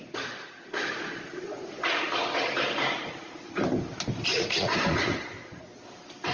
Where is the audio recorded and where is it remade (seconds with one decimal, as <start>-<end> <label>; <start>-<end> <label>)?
0.0-2.1 remade; 2.1-4.3 recorded; 4.3-5.2 remade; 5.2-6.3 recorded